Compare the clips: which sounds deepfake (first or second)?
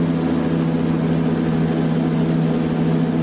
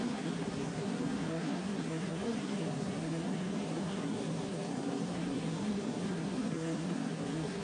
second